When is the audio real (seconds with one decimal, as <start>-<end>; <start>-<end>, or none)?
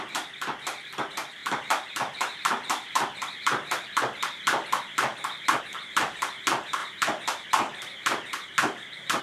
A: 0.0-9.2